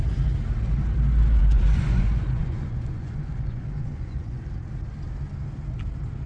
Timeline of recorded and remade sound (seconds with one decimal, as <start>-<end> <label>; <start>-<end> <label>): 0.0-1.4 recorded; 1.4-4.5 remade; 4.5-6.3 recorded